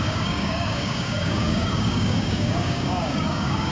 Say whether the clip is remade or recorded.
remade